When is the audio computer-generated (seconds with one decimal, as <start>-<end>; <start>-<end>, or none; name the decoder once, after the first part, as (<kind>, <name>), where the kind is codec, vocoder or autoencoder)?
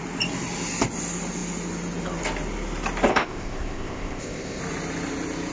3.1-4.6 (codec, ZipCodec)